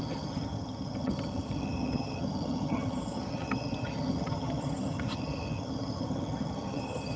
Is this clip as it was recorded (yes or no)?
no